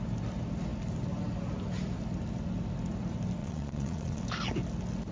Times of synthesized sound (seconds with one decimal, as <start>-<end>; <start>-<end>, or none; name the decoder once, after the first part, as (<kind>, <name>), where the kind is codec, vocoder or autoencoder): 3.4-4.2 (vocoder, Vocos)